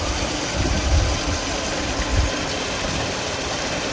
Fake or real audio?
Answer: real